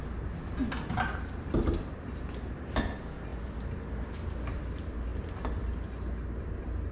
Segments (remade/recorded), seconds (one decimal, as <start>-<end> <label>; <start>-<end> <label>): 0.0-6.9 recorded